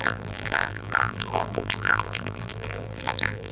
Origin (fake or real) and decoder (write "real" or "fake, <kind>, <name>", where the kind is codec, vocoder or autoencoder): fake, vocoder, BigVGAN v2